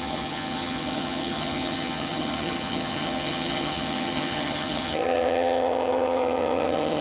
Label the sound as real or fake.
fake